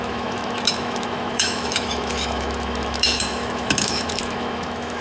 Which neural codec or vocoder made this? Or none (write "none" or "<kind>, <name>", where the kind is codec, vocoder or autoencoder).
autoencoder, DAC-VAE